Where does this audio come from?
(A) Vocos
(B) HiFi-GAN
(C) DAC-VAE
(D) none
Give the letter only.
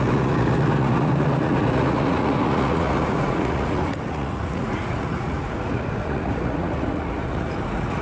A